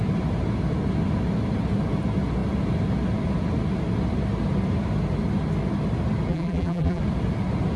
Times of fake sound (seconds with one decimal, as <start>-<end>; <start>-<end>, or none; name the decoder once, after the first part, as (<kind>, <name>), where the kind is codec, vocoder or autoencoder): 6.3-7.0 (vocoder, BigVGAN v2)